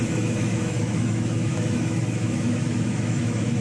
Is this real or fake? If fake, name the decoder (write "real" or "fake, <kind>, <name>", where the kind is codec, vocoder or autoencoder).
fake, autoencoder, DAC-VAE